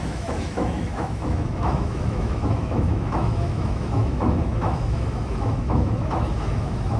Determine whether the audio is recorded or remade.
remade